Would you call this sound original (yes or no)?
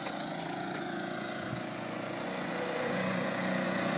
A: no